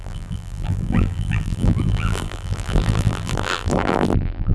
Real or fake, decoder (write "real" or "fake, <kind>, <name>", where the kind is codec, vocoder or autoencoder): fake, vocoder, BigVGAN v2